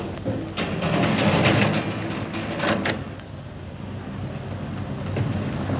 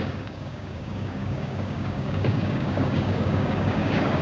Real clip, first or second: first